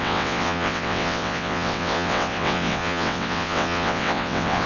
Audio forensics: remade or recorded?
remade